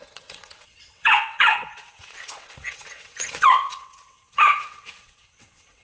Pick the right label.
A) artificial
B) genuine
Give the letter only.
A